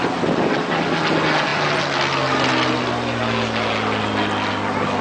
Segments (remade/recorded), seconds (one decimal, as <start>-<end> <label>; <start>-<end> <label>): 0.0-5.0 recorded